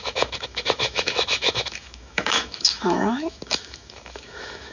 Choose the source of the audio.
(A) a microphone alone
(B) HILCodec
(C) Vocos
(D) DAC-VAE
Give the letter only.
D